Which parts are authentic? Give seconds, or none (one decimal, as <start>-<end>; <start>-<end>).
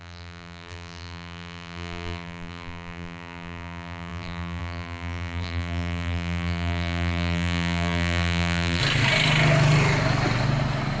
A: 8.8-11.0